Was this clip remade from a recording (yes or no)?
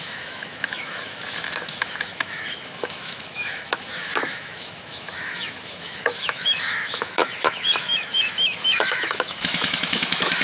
yes